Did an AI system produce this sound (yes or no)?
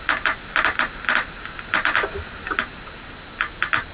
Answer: no